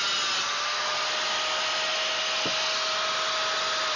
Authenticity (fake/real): real